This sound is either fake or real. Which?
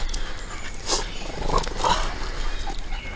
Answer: real